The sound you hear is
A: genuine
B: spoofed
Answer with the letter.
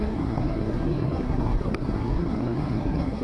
B